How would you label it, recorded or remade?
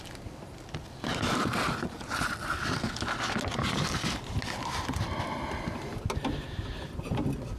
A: recorded